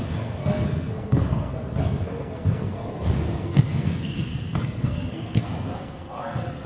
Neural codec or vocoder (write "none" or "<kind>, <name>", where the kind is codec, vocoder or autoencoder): codec, SNAC